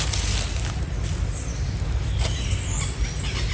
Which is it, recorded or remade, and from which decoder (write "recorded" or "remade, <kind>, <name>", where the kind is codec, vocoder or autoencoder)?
recorded